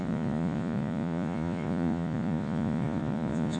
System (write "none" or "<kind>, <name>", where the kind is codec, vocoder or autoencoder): vocoder, Vocos